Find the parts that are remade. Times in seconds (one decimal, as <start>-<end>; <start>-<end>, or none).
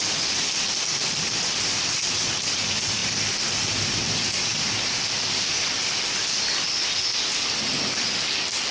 none